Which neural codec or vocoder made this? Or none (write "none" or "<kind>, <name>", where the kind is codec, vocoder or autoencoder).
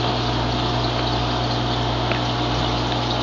none